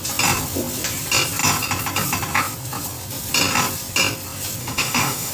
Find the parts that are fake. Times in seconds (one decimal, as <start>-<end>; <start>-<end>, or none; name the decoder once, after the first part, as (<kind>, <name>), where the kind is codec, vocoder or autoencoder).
4.6-5.3 (autoencoder, DAC-VAE)